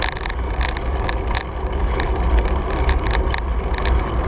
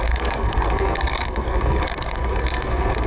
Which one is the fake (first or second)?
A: second